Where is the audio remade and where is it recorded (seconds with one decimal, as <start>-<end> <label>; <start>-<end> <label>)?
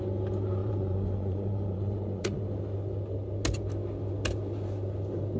0.0-0.6 recorded; 0.6-2.4 remade; 2.4-5.4 recorded